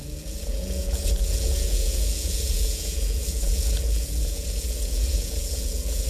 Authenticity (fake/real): fake